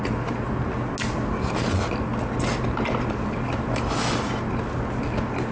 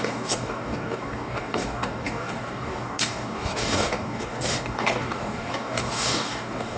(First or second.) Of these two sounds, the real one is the first